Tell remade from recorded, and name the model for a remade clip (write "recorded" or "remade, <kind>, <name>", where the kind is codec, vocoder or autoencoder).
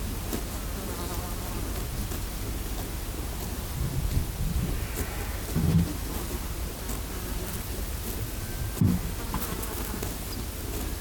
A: recorded